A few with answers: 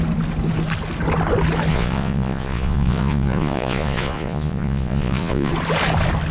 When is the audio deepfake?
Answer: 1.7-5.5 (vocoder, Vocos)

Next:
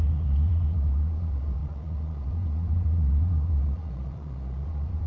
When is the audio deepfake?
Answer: 0.0-5.1 (vocoder, Vocos)

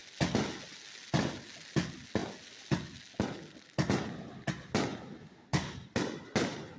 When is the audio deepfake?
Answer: 5.5-6.2 (vocoder, BigVGAN v2)

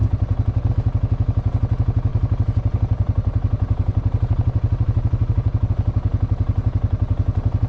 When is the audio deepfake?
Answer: 0.0-0.7 (vocoder, BigVGAN v2); 2.1-5.7

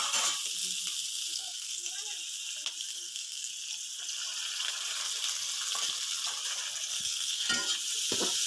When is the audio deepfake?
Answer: 1.3-1.9 (codec, SNAC); 2.9-3.5; 6.9-7.5